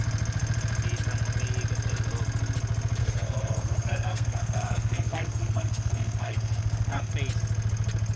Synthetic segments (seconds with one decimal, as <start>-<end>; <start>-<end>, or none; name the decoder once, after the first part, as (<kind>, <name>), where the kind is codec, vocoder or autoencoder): 3.0-7.1 (codec, SNAC)

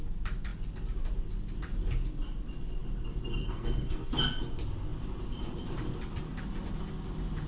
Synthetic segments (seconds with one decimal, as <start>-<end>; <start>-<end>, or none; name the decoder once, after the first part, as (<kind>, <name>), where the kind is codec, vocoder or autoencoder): 3.4-4.1 (codec, SNAC)

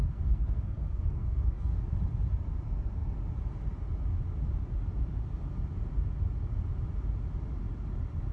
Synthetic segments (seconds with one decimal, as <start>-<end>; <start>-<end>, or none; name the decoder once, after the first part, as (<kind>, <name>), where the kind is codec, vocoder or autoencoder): 0.0-1.8 (codec, SNAC)

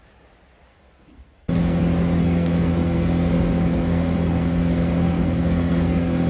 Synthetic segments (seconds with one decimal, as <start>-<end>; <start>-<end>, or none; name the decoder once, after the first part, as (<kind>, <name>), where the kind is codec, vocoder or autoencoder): 0.7-1.8 (codec, SNAC); 2.2-6.3

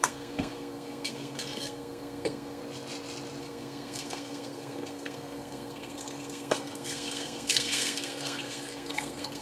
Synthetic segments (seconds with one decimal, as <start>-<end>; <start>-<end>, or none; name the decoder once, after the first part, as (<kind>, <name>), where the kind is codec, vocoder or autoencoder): 0.0-2.6 (codec, SNAC); 3.4-9.4